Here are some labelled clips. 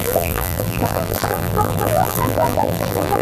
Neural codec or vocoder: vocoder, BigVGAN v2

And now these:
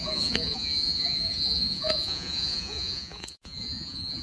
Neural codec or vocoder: vocoder, Vocos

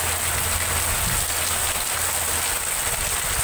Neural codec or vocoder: none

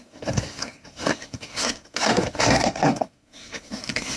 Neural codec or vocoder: codec, SNAC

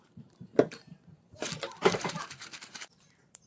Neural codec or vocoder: vocoder, BigVGAN v2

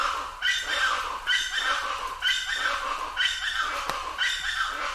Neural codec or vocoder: none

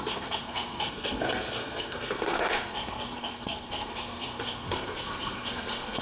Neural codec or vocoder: codec, SNAC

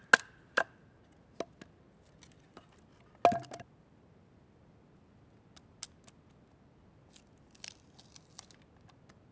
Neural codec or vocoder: none